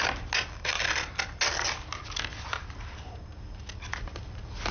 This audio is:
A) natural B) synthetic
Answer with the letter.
A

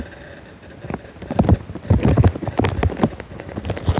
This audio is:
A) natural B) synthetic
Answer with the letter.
A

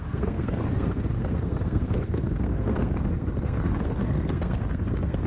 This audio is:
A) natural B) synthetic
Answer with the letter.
B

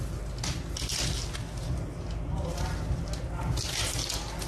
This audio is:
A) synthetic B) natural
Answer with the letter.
B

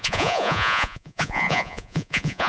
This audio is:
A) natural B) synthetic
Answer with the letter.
B